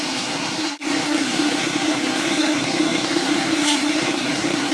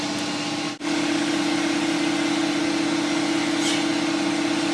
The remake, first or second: first